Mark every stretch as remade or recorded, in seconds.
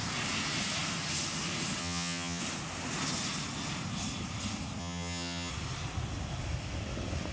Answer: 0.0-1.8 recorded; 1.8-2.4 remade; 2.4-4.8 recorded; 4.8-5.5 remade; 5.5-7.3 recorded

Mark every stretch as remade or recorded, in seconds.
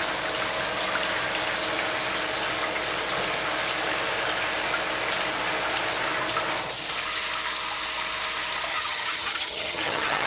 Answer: 0.0-8.7 recorded; 8.7-10.3 remade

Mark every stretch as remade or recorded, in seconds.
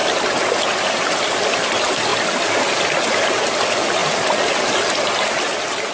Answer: 0.0-5.9 recorded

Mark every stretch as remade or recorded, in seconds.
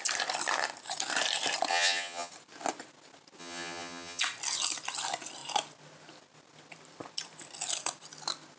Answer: 0.0-1.7 recorded; 1.7-2.3 remade; 2.3-3.4 recorded; 3.4-4.2 remade; 4.2-8.6 recorded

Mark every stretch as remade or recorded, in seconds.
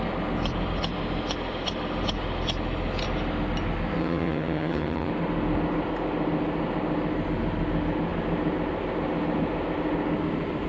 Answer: 0.0-4.0 recorded; 4.0-5.1 remade; 5.1-10.7 recorded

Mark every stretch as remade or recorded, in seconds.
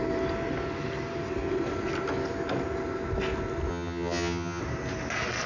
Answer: 0.0-3.7 recorded; 3.7-4.6 remade; 4.6-5.5 recorded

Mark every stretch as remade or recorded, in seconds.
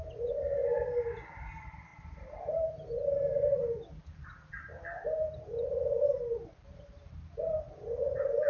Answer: 0.0-8.5 recorded